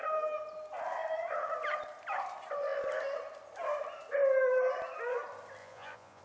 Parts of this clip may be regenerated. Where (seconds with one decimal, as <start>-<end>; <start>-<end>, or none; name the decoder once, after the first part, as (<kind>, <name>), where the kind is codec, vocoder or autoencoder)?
5.6-6.2 (vocoder, Vocos)